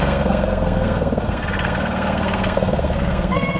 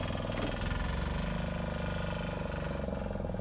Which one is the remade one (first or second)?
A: first